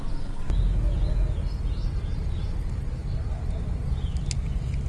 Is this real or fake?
real